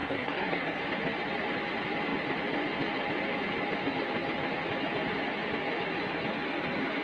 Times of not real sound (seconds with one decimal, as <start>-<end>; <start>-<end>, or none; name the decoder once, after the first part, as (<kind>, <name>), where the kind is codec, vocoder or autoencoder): 0.0-0.8 (codec, SNAC)